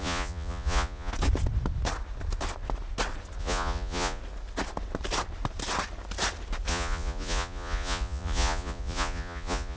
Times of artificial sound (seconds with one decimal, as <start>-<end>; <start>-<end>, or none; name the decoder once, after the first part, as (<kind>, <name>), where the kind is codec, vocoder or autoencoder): 0.0-1.1 (vocoder, Vocos); 3.4-4.2; 6.7-9.8